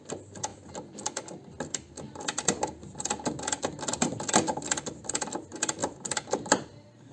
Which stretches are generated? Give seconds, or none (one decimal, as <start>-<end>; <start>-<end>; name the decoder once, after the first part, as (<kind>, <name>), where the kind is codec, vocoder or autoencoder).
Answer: none